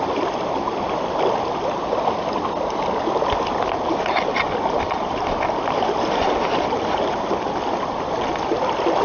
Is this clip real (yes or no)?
yes